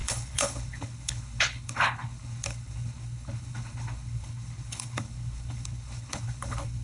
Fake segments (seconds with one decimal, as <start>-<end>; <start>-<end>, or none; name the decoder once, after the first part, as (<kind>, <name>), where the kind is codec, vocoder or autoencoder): 0.0-6.8 (codec, HILCodec)